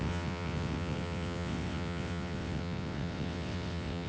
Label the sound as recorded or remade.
remade